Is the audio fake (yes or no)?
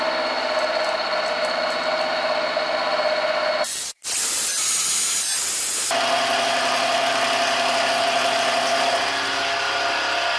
no